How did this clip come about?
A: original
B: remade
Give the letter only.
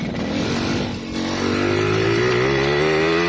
A